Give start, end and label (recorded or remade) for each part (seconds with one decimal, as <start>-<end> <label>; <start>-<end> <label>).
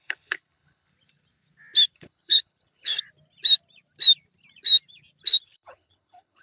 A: 0.0-0.9 remade; 0.9-1.9 recorded; 1.9-2.9 remade; 2.9-5.3 recorded; 5.3-6.4 remade